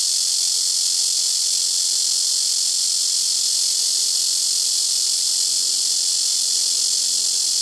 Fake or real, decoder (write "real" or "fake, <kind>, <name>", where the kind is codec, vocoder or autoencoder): real